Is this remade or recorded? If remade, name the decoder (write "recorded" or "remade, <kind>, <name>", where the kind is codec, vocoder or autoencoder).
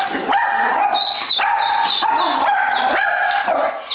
recorded